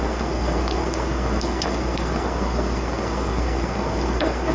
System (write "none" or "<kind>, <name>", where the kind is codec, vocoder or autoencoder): codec, SNAC